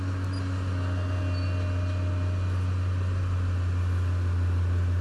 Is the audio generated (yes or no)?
no